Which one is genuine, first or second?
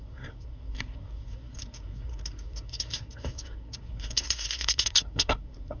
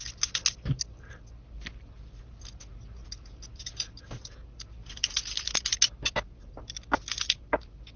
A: second